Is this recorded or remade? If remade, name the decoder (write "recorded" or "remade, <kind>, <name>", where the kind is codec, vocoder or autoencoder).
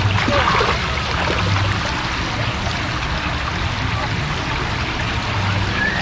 recorded